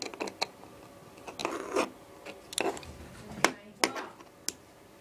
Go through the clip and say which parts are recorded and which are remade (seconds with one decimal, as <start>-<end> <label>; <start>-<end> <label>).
0.0-5.0 recorded

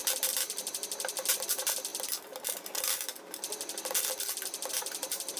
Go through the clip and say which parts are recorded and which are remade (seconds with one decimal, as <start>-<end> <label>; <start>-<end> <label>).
0.0-5.4 recorded

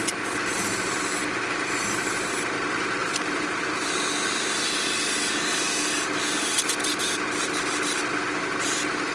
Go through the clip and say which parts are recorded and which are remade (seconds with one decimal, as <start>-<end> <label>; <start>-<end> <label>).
0.0-3.0 recorded; 3.0-3.9 remade; 3.9-9.1 recorded

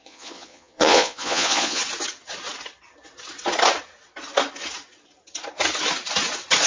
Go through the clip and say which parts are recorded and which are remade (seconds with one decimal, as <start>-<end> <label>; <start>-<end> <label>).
0.0-1.8 remade; 1.8-6.7 recorded

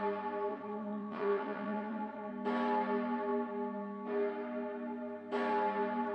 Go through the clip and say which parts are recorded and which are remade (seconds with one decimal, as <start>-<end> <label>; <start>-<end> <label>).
0.0-0.5 recorded; 0.5-2.3 remade; 2.3-6.1 recorded

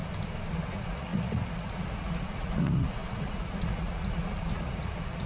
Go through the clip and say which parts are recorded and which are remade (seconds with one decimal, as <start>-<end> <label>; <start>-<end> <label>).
0.0-0.5 recorded; 0.5-5.3 remade

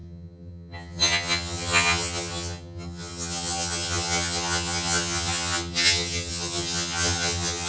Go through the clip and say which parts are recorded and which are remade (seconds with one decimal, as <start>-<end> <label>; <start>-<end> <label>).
0.0-7.7 remade